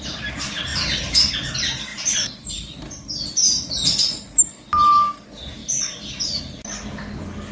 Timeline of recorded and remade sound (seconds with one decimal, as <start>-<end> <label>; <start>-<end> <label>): 0.0-0.7 recorded; 0.7-1.3 remade; 1.3-1.9 recorded; 1.9-2.5 remade; 2.5-7.5 recorded